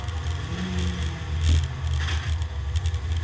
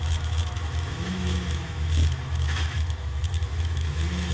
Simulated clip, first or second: second